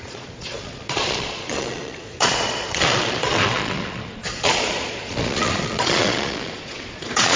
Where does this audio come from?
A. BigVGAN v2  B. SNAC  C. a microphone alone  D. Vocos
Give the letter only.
D